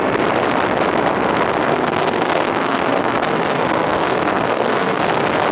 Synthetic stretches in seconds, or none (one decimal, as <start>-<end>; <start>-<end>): 1.7-5.0